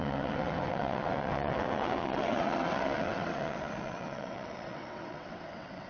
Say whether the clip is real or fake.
fake